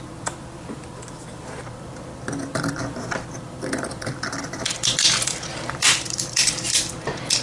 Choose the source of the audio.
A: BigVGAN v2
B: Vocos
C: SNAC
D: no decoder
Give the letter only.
A